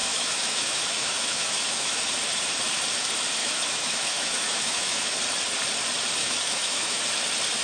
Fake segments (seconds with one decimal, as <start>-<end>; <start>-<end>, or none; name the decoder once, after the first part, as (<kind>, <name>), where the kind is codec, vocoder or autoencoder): 0.0-2.1 (autoencoder, DAC-VAE); 3.4-5.2; 6.2-7.0